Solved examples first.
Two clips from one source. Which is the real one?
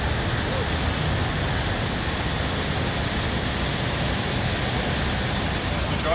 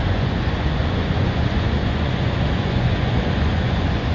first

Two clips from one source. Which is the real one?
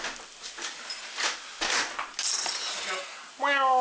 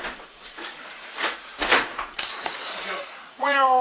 first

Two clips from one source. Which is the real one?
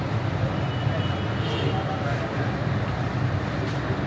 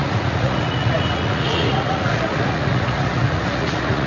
first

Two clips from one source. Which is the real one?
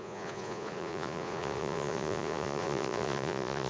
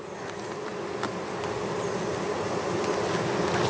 second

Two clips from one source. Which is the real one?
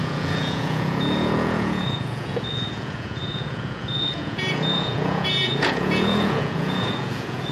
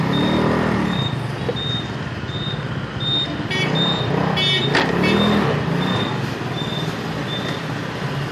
second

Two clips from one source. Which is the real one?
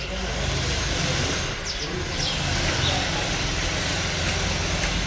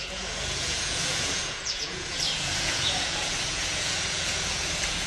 first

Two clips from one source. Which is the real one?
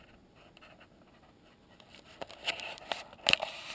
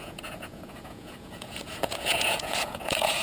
first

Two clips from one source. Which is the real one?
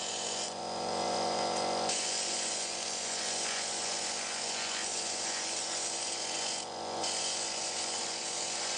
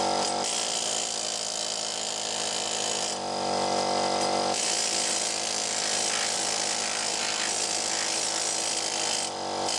second